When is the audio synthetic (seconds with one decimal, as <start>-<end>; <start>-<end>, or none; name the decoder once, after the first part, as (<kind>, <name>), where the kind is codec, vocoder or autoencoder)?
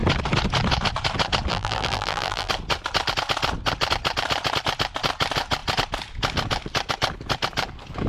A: 1.5-2.5 (vocoder, BigVGAN v2)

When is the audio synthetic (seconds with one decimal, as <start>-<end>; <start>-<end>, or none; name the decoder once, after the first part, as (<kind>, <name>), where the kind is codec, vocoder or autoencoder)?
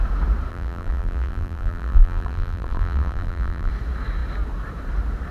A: 0.5-3.7 (vocoder, BigVGAN v2)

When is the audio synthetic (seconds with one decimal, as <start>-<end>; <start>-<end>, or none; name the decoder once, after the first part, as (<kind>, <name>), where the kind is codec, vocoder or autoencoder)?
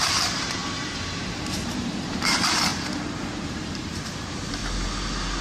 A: 0.0-4.6 (vocoder, BigVGAN v2)